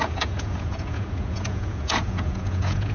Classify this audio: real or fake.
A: fake